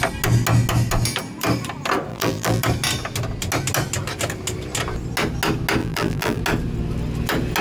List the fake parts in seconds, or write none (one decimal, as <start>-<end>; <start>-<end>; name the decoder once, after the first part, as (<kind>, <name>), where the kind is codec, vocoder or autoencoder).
2.1-2.6 (vocoder, BigVGAN v2); 5.8-6.4